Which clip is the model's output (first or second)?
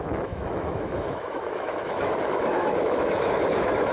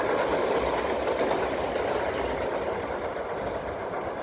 first